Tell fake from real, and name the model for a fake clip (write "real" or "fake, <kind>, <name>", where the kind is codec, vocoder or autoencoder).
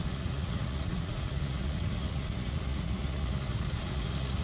fake, vocoder, Vocos